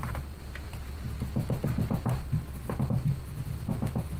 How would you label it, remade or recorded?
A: recorded